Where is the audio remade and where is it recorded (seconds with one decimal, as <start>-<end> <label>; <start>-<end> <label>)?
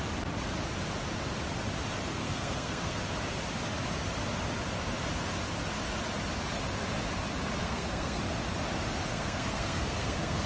0.0-2.1 recorded; 2.1-3.0 remade; 3.0-7.6 recorded; 7.6-8.2 remade; 8.2-9.1 recorded; 9.1-10.5 remade